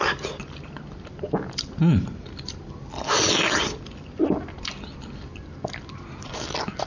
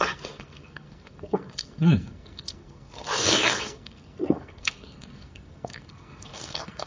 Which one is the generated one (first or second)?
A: second